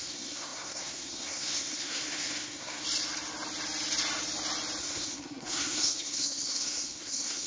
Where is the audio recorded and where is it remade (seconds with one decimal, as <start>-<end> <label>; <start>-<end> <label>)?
0.0-2.8 remade; 2.8-4.8 recorded; 4.8-7.5 remade